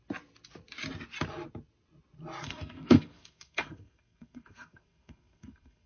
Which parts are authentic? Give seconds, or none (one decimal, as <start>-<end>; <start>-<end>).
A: 0.0-2.4